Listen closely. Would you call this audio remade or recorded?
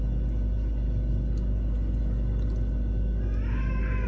recorded